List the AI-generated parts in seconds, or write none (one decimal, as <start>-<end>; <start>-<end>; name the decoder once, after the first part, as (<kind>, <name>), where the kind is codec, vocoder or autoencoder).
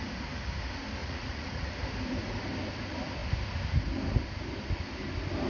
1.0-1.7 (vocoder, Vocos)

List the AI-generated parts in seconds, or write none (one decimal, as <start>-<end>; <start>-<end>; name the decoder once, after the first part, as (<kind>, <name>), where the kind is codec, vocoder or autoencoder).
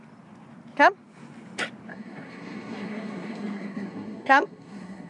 1.9-5.1 (codec, SNAC)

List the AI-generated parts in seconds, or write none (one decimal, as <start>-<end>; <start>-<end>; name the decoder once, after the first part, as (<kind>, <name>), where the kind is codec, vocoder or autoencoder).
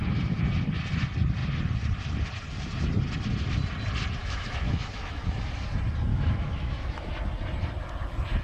4.2-5.4 (autoencoder, DAC-VAE); 6.1-7.1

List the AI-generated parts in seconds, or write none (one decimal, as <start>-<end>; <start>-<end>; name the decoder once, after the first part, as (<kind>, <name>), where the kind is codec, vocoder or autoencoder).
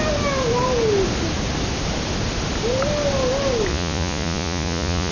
3.7-5.1 (vocoder, Vocos)